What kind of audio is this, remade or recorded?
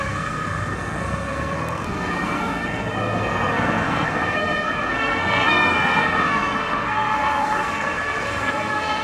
remade